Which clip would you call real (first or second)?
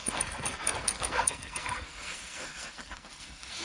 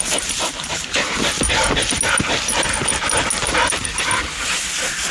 second